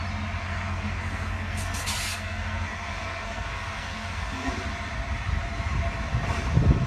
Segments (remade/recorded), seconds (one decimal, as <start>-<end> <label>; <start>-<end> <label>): 0.0-0.4 recorded; 0.4-4.5 remade; 4.5-6.9 recorded